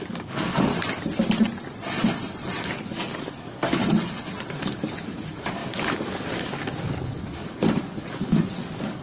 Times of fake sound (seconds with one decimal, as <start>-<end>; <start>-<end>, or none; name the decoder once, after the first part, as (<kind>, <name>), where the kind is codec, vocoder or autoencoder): 0.0-0.7 (codec, DAC); 2.6-3.8; 4.5-9.0